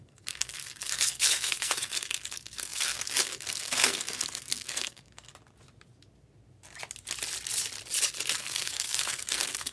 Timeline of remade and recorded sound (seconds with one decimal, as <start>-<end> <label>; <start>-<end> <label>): 0.0-5.3 remade; 5.3-8.4 recorded; 8.4-9.7 remade